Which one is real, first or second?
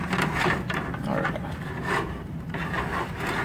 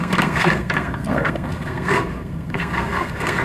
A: first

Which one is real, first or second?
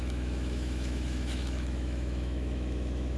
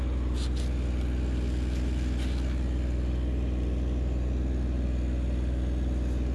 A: second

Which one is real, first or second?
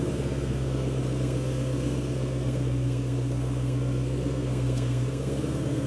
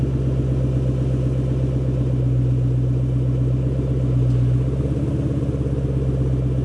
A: second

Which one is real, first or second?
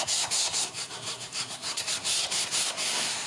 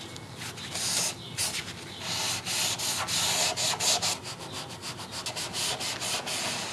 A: second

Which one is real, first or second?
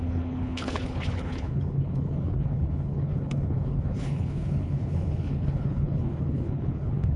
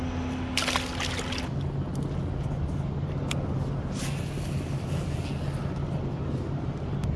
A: second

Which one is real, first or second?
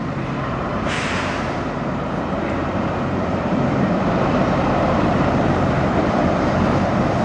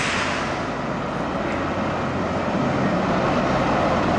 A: second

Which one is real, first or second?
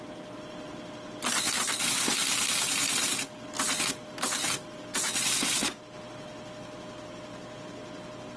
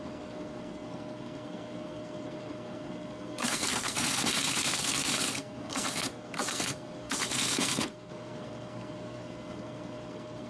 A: first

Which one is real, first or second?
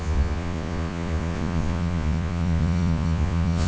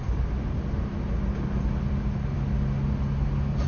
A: second